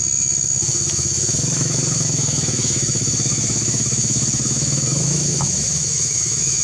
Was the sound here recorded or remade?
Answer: remade